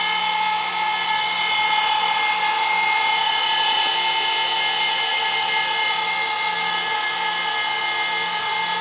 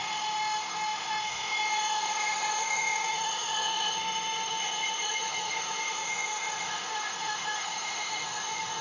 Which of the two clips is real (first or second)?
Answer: first